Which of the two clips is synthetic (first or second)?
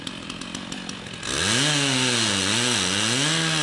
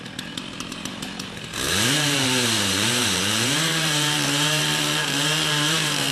second